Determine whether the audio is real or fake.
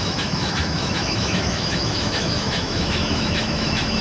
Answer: fake